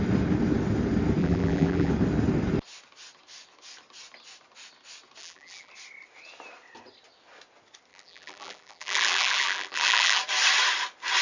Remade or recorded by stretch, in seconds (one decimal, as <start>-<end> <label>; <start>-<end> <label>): 0.0-1.2 recorded; 1.2-1.9 remade; 1.9-5.2 recorded; 5.2-5.7 remade; 5.7-7.9 recorded; 7.9-10.2 remade; 10.2-11.2 recorded